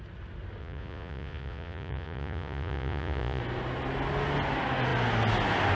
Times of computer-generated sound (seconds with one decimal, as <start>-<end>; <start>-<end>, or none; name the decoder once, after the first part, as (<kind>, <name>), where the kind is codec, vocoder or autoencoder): 0.6-3.4 (vocoder, Vocos)